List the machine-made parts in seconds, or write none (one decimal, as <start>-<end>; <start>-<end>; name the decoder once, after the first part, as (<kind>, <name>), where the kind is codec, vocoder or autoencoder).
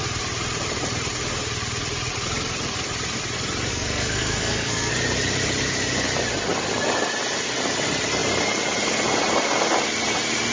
3.7-4.9 (codec, SNAC)